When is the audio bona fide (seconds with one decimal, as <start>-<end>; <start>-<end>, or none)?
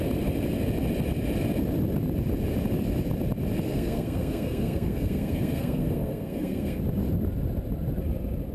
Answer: 0.0-3.7; 6.8-8.5